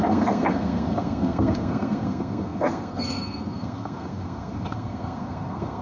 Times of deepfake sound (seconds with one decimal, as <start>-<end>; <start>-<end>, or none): 0.0-5.8